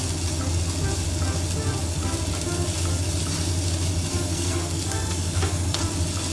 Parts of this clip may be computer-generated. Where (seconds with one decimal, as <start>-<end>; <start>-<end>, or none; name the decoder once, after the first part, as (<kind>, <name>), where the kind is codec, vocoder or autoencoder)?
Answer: 4.1-5.8 (codec, SNAC)